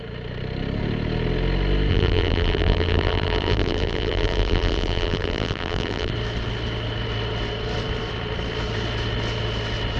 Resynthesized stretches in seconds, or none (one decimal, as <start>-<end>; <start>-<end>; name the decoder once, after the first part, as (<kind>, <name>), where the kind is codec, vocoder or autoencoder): 1.9-6.1 (vocoder, BigVGAN v2)